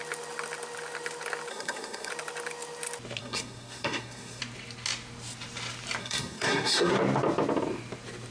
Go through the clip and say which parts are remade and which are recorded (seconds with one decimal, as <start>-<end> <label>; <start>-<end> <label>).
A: 0.0-1.5 recorded; 1.5-2.1 remade; 2.1-3.2 recorded; 3.2-4.4 remade; 4.4-6.0 recorded; 6.0-6.9 remade; 6.9-8.3 recorded